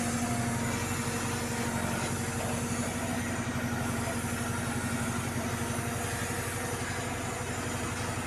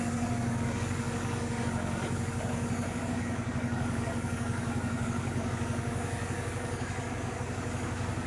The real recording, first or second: first